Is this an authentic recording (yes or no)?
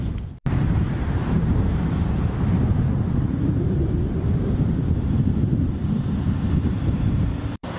no